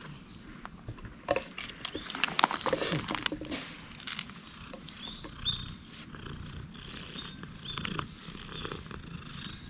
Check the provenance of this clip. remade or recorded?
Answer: recorded